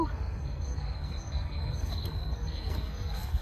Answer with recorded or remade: remade